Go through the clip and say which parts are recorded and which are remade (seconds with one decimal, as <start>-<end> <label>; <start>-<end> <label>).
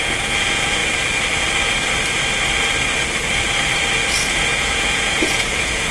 0.0-0.8 remade; 0.8-4.3 recorded; 4.3-5.9 remade